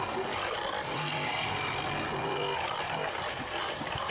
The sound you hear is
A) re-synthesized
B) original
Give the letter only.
B